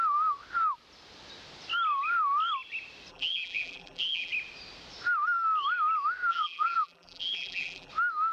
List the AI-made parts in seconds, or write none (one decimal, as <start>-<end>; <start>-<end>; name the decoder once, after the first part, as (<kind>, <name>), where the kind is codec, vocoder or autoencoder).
3.1-4.3 (vocoder, BigVGAN v2); 6.3-7.9